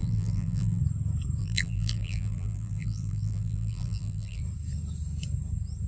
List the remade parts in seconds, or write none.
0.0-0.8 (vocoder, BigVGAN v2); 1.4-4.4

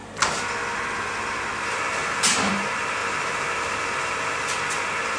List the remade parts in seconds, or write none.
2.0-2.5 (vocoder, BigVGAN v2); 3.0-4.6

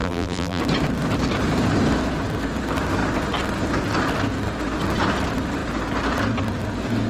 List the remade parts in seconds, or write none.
0.0-0.6 (vocoder, BigVGAN v2)

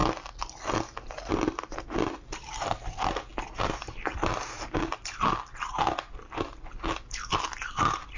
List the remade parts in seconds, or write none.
1.3-3.3 (vocoder, BigVGAN v2); 7.3-8.2